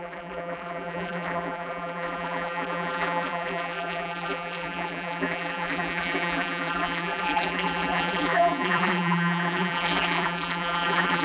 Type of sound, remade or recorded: remade